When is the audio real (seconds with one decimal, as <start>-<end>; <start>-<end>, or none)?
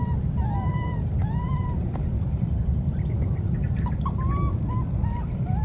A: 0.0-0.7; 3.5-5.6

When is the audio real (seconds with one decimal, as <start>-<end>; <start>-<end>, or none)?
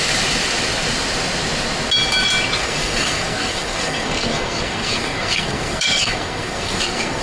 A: 0.0-2.6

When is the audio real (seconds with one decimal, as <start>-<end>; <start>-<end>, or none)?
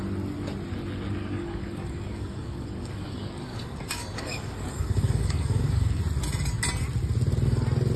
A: 0.0-1.2; 6.0-8.0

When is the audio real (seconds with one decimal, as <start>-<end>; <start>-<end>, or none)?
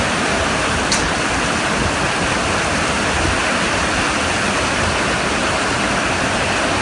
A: 0.0-6.8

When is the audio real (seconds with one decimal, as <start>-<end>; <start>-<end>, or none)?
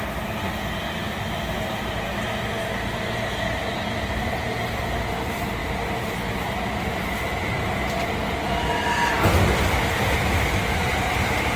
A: 0.0-11.6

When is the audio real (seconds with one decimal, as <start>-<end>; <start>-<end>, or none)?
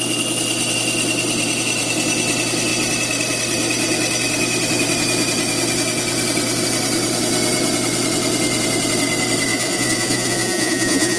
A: 0.0-9.5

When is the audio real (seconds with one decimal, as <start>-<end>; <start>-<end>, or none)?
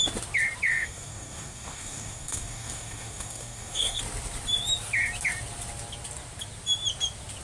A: 0.0-0.7; 4.0-7.4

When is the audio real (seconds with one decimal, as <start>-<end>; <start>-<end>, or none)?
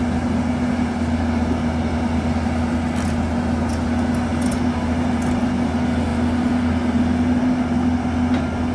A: 0.0-8.7